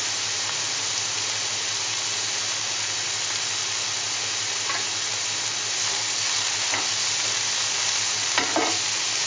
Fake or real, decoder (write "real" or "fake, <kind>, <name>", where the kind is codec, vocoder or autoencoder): real